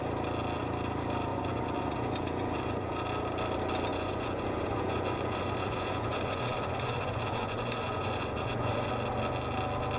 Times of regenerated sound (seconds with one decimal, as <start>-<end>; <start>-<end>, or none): 1.3-2.9; 3.9-8.9